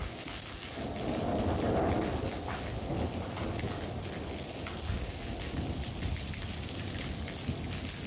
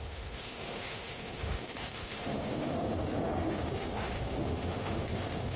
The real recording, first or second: first